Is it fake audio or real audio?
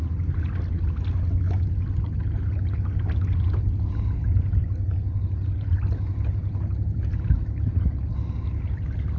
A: real